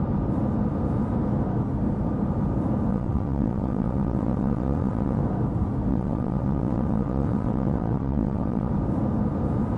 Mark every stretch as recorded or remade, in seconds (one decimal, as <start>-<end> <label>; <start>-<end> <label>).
0.0-2.9 recorded; 2.9-5.2 remade; 5.2-5.9 recorded; 5.9-8.7 remade; 8.7-9.8 recorded